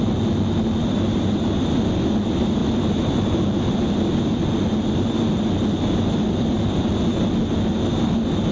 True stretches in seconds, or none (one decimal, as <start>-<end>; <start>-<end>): 0.0-8.5